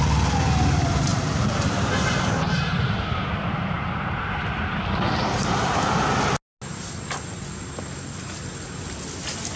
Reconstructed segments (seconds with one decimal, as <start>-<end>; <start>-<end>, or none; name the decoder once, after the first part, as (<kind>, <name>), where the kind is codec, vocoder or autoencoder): 1.1-4.6 (vocoder, BigVGAN v2)